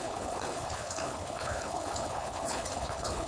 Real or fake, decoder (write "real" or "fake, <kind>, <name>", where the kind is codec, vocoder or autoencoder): fake, codec, HILCodec